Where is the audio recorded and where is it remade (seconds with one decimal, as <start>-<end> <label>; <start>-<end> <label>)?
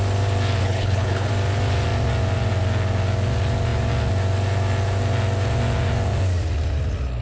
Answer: 0.0-0.6 recorded; 0.6-1.3 remade; 1.3-7.2 recorded